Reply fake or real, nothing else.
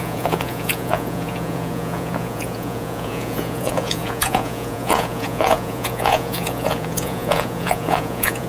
fake